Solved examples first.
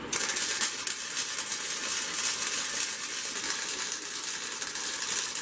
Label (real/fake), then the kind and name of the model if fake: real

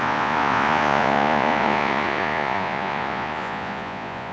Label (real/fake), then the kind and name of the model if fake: fake, vocoder, Vocos